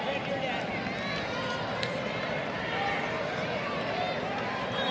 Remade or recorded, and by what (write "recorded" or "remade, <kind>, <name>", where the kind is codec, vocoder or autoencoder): recorded